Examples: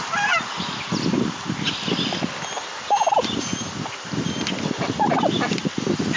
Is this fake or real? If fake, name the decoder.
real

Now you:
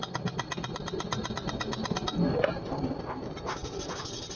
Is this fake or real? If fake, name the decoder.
real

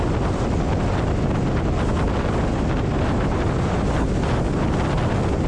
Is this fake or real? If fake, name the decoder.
real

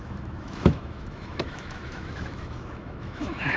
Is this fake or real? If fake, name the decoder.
fake, autoencoder, DAC-VAE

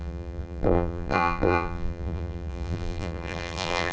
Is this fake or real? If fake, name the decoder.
fake, vocoder, BigVGAN v2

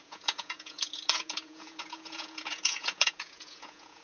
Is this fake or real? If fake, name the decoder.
fake, vocoder, Vocos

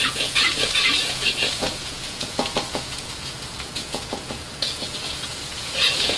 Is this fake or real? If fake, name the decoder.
fake, vocoder, Vocos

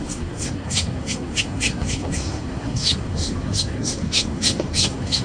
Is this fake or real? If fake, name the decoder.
fake, codec, SNAC